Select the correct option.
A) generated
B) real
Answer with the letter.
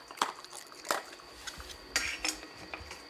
B